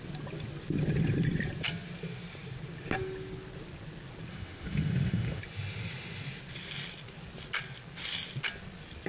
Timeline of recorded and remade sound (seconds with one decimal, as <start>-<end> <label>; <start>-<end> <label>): 0.0-4.3 recorded; 4.3-5.4 remade; 5.4-9.1 recorded

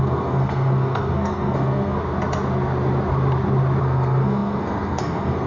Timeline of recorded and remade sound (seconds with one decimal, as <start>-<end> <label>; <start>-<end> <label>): 0.0-2.0 remade; 2.0-3.8 recorded; 3.8-5.5 remade

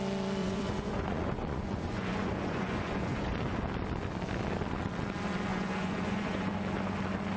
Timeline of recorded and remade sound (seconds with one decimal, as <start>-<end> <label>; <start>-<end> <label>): 0.0-0.4 recorded; 0.4-3.6 remade; 3.6-5.5 recorded; 5.5-6.5 remade; 6.5-7.4 recorded